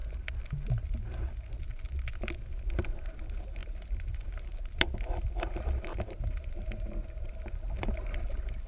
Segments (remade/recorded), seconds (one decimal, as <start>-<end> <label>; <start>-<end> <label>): 0.0-3.6 recorded; 3.6-4.3 remade; 4.3-5.9 recorded; 5.9-7.3 remade; 7.3-8.7 recorded